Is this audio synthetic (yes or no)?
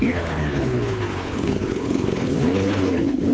yes